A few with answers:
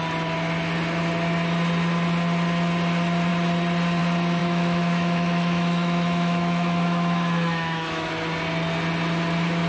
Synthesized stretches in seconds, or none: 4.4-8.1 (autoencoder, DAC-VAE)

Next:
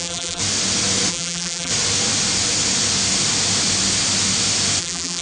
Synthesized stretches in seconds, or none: 0.0-0.4 (vocoder, BigVGAN v2); 1.1-1.7; 4.8-5.2

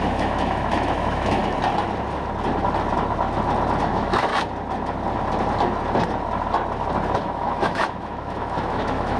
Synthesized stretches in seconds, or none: 0.0-1.4 (autoencoder, DAC-VAE); 3.9-4.3; 7.2-9.2

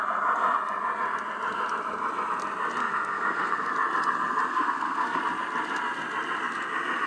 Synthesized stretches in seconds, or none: 2.8-3.7 (codec, SNAC); 4.5-5.2

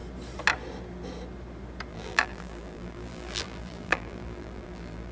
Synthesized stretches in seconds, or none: 1.9-5.1 (vocoder, BigVGAN v2)

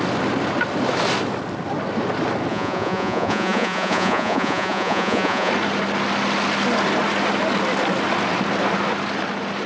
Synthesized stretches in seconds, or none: 2.5-5.5 (vocoder, Vocos)